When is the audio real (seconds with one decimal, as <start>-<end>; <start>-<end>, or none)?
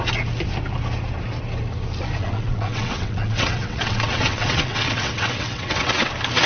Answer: 0.0-2.2; 6.1-6.5